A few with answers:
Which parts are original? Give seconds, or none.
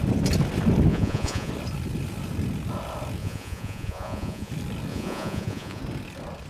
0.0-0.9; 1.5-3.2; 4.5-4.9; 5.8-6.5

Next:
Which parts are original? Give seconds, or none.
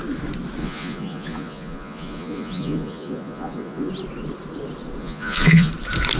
0.0-0.6; 3.9-5.0; 5.7-6.2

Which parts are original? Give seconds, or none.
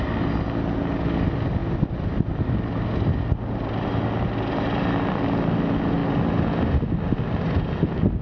0.0-8.2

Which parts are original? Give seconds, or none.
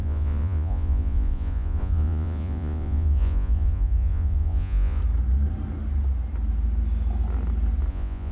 5.0-7.9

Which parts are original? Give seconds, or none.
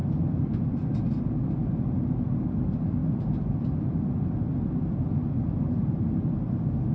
0.0-6.9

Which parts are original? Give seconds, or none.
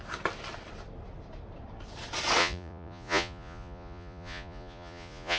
0.0-2.4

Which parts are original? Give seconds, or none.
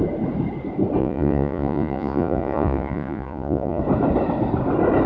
0.0-1.0; 3.8-5.1